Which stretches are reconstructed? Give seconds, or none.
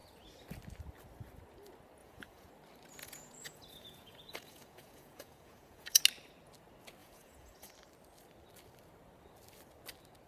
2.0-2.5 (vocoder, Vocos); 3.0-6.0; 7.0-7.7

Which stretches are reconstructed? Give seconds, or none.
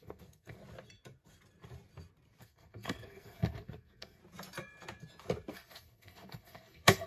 0.0-0.6 (codec, SNAC); 2.4-4.2; 5.5-7.1